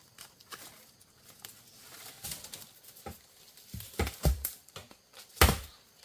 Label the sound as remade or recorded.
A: recorded